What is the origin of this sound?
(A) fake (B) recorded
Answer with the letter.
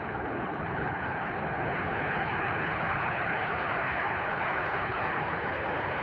A